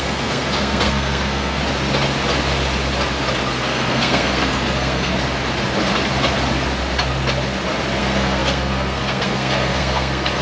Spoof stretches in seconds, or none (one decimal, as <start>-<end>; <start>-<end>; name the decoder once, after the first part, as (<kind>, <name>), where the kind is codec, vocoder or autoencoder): 0.0-1.6 (codec, SNAC); 3.6-5.1; 8.0-10.4